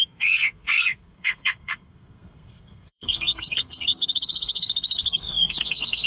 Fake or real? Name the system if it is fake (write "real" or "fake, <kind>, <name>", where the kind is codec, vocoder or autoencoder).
fake, codec, SNAC